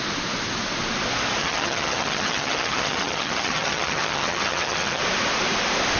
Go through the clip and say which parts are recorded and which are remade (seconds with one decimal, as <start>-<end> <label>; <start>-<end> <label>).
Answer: 0.0-1.4 recorded; 1.4-5.0 remade; 5.0-6.0 recorded